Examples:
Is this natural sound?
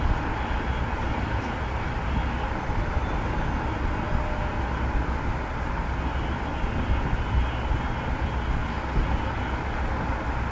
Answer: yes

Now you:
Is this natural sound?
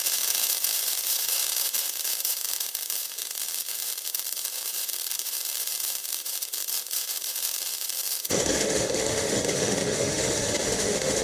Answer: no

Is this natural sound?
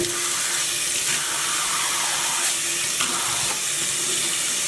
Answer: yes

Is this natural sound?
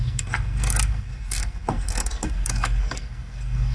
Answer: no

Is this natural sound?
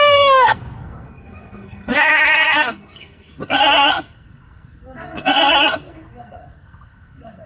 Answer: no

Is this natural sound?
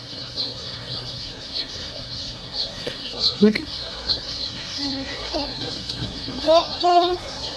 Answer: no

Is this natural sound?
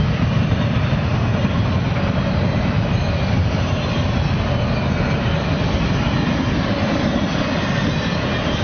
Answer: yes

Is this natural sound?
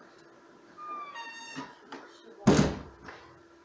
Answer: yes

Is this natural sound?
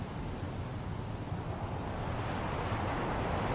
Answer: yes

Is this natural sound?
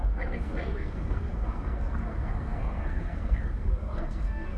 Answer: no